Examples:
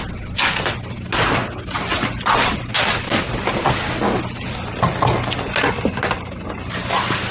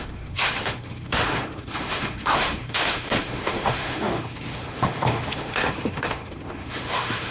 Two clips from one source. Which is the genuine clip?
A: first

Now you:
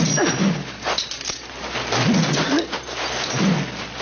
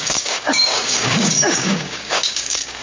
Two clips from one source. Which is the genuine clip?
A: first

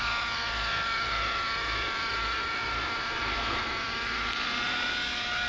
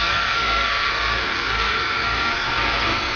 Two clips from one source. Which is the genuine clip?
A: first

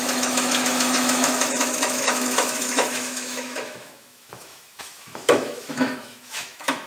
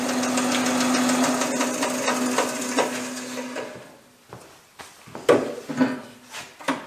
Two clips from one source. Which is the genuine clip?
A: second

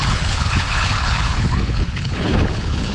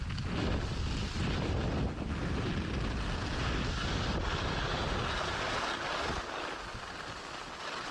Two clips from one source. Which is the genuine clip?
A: second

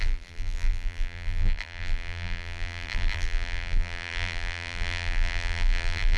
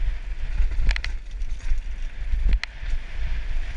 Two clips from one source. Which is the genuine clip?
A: second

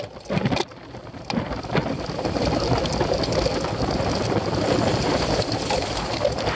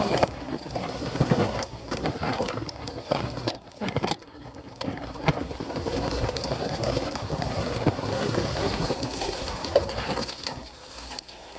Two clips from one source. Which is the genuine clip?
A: first